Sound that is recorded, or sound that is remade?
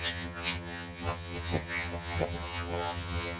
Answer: remade